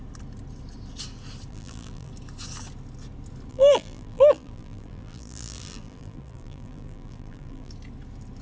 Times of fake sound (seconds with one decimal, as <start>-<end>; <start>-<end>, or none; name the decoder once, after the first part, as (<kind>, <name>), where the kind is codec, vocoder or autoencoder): 1.5-2.1 (vocoder, BigVGAN v2); 3.5-7.7